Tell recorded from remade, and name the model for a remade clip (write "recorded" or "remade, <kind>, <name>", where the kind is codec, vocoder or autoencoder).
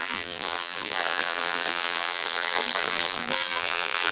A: remade, vocoder, BigVGAN v2